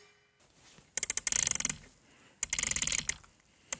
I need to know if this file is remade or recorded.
recorded